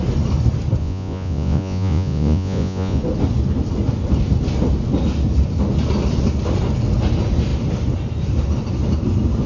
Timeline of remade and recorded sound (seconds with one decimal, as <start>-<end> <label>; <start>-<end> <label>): 0.0-0.8 recorded; 0.8-3.0 remade; 3.0-9.5 recorded